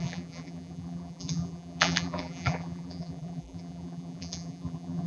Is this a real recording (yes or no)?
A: no